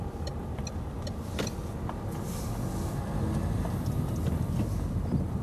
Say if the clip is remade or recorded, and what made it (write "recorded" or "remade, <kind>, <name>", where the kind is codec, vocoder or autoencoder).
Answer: recorded